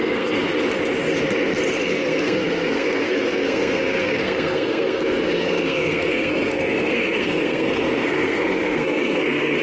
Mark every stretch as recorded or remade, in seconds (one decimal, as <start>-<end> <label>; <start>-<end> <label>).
0.0-0.5 remade; 0.5-1.8 recorded; 1.8-9.6 remade